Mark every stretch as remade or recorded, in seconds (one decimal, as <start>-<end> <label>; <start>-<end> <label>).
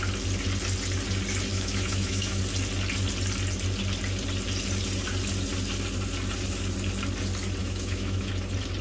0.0-1.5 recorded; 1.5-2.4 remade; 2.4-7.6 recorded; 7.6-8.3 remade; 8.3-8.8 recorded